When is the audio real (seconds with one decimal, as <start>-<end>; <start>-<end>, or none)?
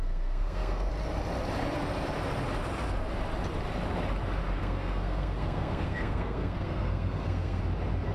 0.9-4.6; 7.6-8.1